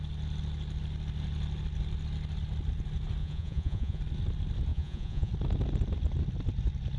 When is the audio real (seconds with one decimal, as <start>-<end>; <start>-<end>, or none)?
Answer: 0.0-3.2; 4.0-4.7; 5.3-7.0